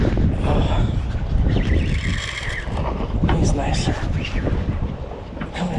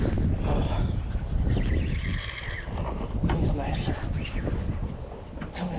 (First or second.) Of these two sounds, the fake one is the first